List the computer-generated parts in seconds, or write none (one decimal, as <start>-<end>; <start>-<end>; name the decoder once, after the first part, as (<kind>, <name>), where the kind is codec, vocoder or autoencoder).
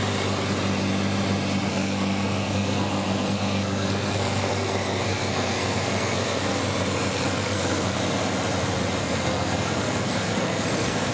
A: 1.7-6.6 (codec, SNAC); 7.1-8.0; 9.0-11.1